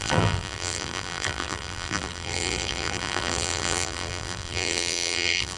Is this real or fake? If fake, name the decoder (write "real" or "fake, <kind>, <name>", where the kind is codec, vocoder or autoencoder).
fake, vocoder, BigVGAN v2